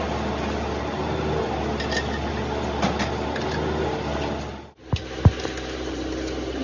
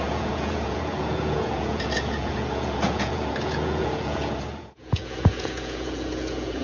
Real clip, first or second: first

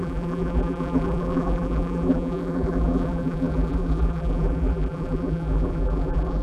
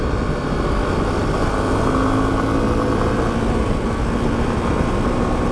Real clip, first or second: second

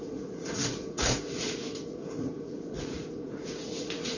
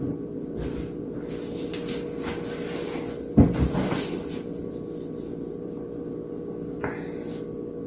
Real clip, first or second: second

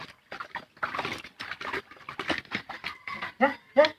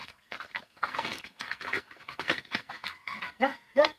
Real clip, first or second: first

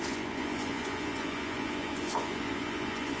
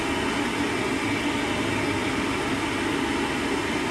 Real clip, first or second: second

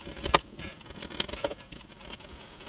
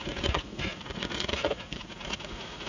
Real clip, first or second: first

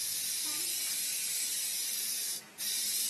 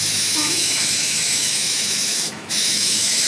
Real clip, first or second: first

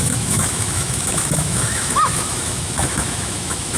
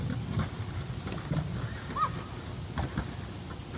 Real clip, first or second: second